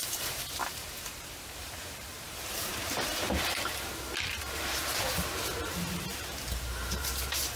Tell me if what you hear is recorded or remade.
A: remade